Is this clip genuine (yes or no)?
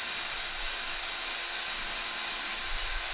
yes